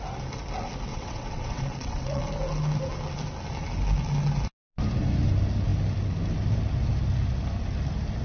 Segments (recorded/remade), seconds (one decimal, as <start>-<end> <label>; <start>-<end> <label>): 0.0-0.9 recorded; 0.9-2.2 remade; 2.2-8.2 recorded